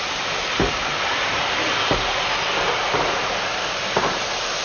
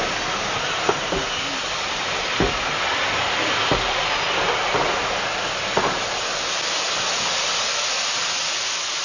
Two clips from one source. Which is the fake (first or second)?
first